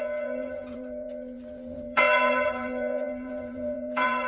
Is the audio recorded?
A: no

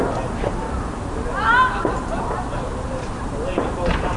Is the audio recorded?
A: yes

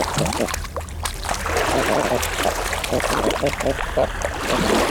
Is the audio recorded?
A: yes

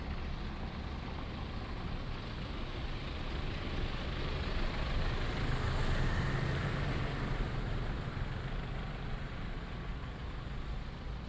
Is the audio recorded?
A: yes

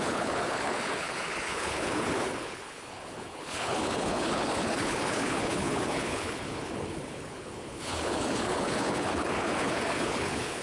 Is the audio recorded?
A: no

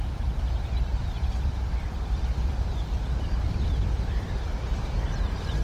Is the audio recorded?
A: no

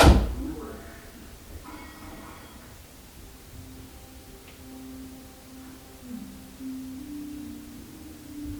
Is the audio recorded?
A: yes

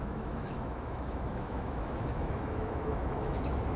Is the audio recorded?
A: no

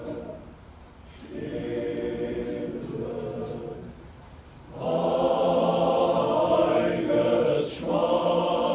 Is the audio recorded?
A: no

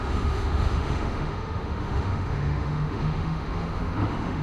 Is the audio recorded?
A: no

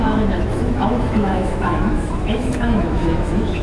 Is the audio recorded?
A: no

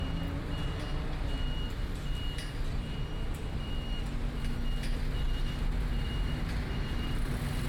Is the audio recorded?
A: no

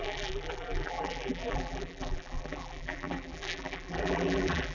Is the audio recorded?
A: no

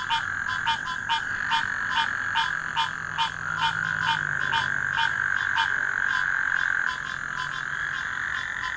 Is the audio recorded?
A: yes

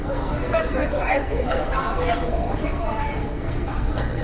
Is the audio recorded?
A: no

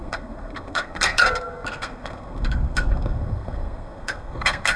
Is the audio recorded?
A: no